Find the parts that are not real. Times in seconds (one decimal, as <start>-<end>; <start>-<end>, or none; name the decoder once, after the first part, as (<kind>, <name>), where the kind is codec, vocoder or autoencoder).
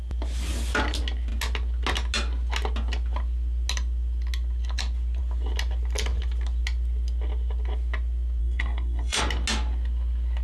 8.4-9.2 (codec, SNAC)